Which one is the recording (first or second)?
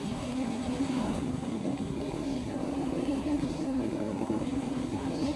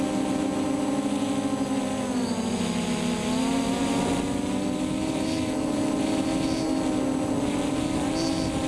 second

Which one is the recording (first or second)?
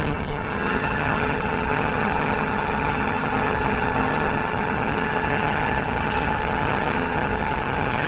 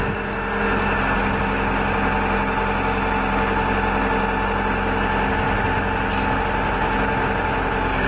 second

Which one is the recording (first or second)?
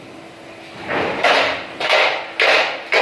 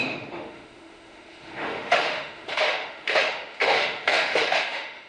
first